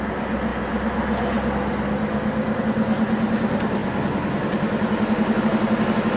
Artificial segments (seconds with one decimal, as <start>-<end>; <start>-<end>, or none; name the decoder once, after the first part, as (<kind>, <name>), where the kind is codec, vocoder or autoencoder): none